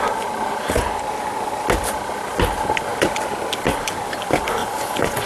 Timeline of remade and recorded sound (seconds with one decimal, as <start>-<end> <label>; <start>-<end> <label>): 0.0-4.6 recorded; 4.6-5.3 remade